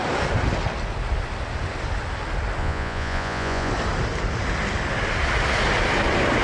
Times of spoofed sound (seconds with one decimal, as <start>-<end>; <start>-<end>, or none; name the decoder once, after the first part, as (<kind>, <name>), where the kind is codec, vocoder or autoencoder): 2.6-3.7 (vocoder, Vocos)